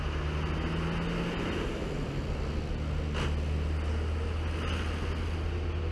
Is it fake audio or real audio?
real